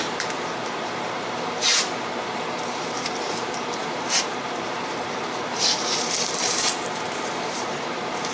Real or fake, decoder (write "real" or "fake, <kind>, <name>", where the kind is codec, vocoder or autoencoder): fake, vocoder, BigVGAN v2